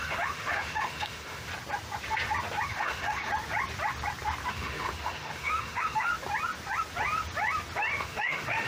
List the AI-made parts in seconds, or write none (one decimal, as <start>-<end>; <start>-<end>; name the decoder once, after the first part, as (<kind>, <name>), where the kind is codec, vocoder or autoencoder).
0.0-1.5 (autoencoder, DAC-VAE); 2.7-3.3; 4.5-6.1; 8.0-8.7